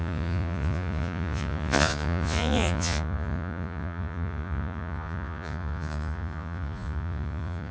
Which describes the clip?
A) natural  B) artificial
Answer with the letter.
B